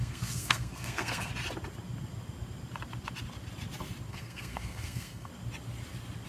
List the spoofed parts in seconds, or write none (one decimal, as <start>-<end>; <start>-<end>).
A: 0.0-1.3; 4.1-5.3